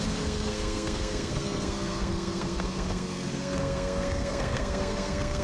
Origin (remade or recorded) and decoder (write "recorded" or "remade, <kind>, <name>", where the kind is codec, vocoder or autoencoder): remade, codec, SNAC